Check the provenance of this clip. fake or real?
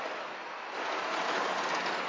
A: real